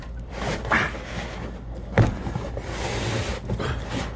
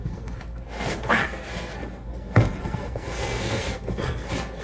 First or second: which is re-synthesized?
second